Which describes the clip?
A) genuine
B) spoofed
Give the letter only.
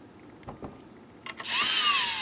A